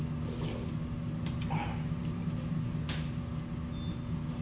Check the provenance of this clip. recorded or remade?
recorded